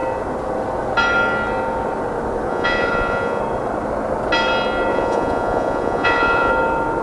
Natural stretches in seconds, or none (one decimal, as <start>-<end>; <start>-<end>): 0.0-2.5; 3.4-4.9; 6.5-7.0